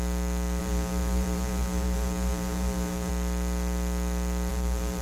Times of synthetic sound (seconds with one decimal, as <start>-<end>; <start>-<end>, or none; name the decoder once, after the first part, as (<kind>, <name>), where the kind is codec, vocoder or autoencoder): 0.6-3.1 (vocoder, BigVGAN v2); 4.5-5.0